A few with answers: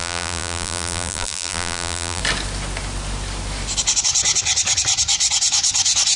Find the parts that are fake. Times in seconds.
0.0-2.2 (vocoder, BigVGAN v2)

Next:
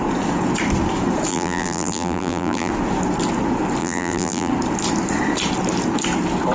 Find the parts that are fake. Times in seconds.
1.3-2.7 (vocoder, BigVGAN v2); 3.8-4.5

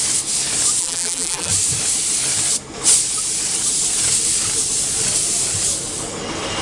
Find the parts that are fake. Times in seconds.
0.8-1.5 (vocoder, BigVGAN v2)

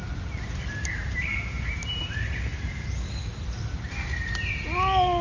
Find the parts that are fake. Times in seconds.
0.0-1.3 (vocoder, BigVGAN v2); 2.0-2.5